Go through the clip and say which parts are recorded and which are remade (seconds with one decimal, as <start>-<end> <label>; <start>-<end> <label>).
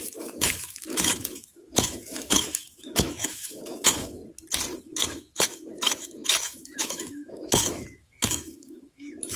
0.0-4.2 remade; 4.2-4.8 recorded; 4.8-9.4 remade